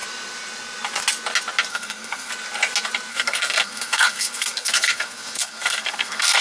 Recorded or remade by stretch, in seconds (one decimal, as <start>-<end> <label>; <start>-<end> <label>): 0.0-1.7 recorded; 1.7-2.3 remade; 2.3-3.1 recorded; 3.1-6.4 remade